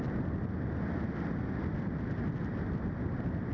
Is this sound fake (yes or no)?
no